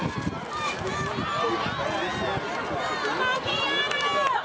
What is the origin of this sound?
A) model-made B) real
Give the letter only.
B